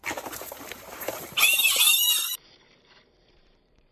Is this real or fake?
fake